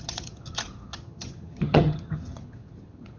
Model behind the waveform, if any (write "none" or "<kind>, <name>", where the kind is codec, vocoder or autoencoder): vocoder, HiFi-GAN